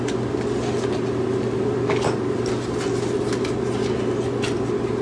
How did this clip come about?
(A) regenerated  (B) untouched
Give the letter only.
B